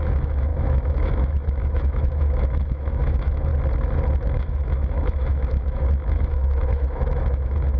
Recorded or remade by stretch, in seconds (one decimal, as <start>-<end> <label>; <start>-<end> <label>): 0.0-3.5 remade; 3.5-4.2 recorded; 4.2-7.8 remade